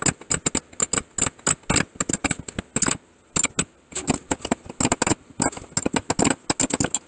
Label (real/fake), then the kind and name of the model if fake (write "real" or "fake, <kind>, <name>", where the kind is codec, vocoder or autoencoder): real